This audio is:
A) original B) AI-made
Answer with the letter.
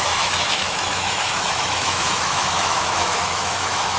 B